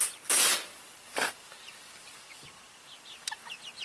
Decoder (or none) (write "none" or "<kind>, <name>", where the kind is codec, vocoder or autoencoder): none